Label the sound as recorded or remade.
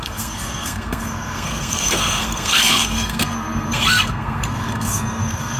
remade